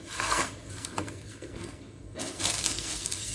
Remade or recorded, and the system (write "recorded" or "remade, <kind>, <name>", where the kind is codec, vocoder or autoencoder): remade, codec, SNAC